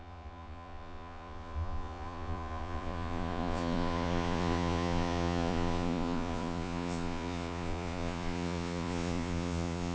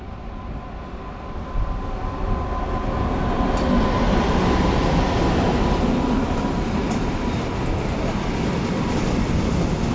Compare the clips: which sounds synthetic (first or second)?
first